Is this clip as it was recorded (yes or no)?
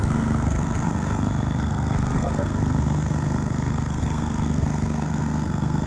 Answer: no